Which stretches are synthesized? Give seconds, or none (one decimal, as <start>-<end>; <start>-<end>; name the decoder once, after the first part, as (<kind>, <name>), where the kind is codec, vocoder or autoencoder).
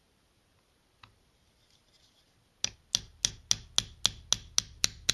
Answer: 0.0-1.8 (vocoder, BigVGAN v2)